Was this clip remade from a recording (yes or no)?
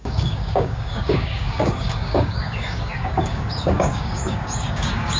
yes